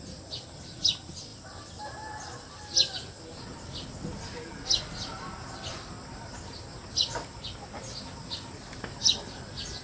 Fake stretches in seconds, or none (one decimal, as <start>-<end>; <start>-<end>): none